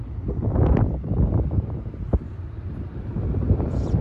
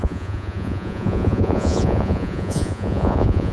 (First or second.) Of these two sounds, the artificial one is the second